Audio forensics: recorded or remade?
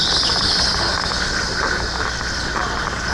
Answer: recorded